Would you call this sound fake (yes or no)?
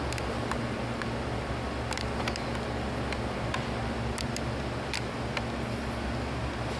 no